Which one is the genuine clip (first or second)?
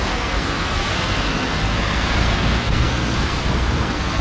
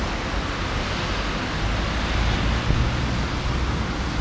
second